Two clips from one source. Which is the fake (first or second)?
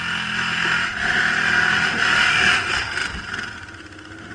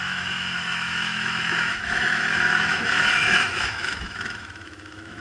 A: second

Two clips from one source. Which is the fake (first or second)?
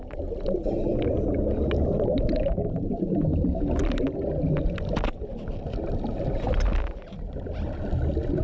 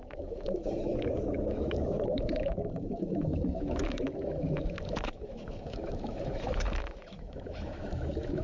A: second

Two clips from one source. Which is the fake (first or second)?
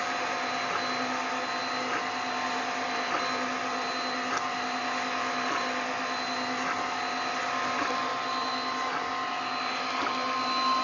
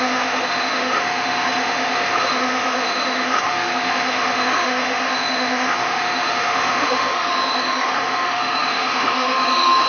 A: second